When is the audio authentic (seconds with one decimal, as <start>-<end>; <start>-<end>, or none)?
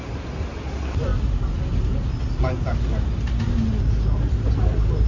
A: 0.0-5.1